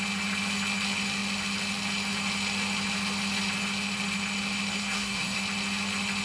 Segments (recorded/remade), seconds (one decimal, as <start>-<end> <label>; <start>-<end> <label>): 0.0-4.8 recorded; 4.8-5.4 remade; 5.4-6.2 recorded